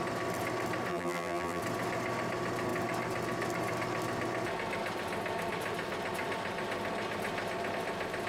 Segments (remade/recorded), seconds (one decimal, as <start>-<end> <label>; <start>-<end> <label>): 0.0-0.9 recorded; 0.9-1.6 remade; 1.6-8.3 recorded